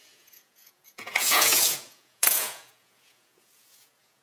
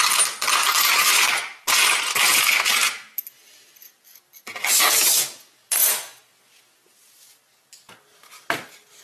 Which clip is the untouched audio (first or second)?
second